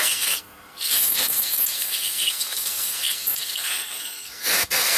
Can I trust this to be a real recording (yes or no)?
no